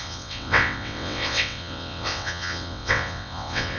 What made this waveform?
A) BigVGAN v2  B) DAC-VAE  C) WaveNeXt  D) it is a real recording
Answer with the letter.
C